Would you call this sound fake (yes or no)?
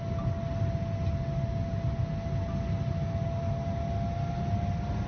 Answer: no